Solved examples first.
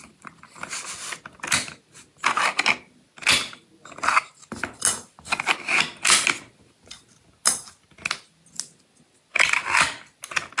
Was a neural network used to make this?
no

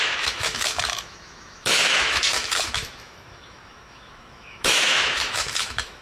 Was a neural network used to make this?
yes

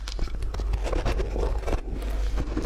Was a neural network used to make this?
no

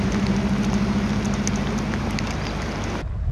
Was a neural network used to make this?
no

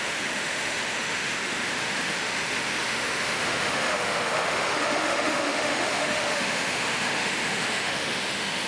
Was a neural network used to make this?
yes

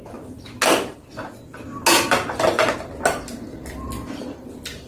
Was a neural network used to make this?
no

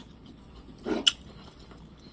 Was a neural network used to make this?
no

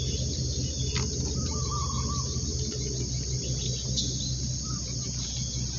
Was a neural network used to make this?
no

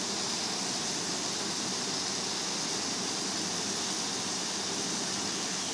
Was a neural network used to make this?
no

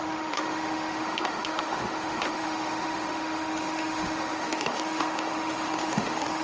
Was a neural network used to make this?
yes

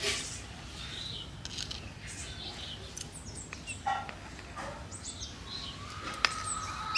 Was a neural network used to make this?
no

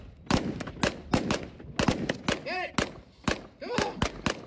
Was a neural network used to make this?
no